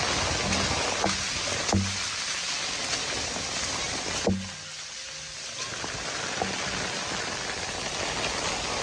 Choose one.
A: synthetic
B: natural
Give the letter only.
B